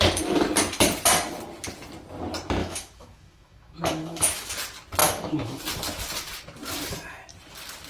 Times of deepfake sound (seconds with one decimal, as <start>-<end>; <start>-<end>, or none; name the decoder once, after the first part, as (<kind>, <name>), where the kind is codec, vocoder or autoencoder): 2.6-4.5 (autoencoder, DAC-VAE); 5.0-5.6